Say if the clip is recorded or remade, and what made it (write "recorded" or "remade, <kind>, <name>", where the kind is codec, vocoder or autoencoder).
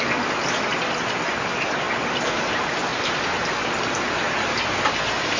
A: recorded